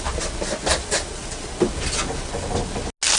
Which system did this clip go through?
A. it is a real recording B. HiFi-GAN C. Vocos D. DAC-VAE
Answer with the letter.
A